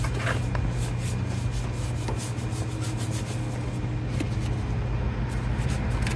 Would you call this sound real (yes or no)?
yes